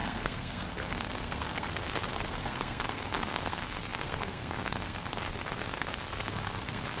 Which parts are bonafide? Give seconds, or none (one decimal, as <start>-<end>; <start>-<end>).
none